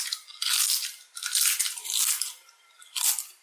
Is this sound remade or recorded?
remade